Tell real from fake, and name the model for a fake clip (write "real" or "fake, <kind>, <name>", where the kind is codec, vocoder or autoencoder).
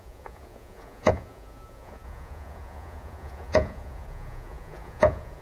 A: fake, vocoder, Vocos